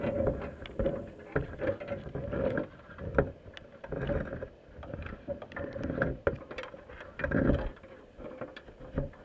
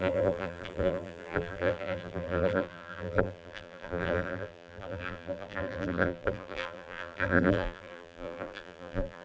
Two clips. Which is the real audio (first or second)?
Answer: first